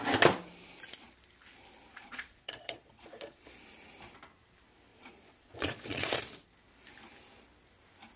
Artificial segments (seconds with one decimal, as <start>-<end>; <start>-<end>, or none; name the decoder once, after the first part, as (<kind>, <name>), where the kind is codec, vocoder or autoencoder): 1.9-3.4 (vocoder, Vocos); 4.9-6.2